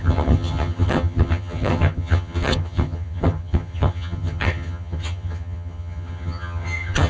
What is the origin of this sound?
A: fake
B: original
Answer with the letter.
A